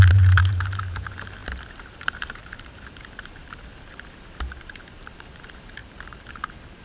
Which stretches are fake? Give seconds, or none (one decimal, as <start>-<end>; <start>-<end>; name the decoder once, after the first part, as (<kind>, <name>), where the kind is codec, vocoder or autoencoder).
0.0-6.8 (vocoder, BigVGAN v2)